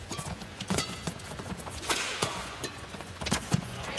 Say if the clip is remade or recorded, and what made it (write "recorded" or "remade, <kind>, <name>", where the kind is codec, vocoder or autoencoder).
remade, vocoder, Vocos